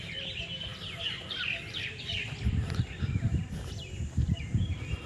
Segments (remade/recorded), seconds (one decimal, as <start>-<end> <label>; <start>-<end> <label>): 0.0-0.7 recorded; 0.7-3.8 remade; 3.8-5.1 recorded